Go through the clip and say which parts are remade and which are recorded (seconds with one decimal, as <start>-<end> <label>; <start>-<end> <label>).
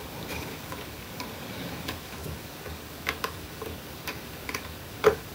0.0-5.3 remade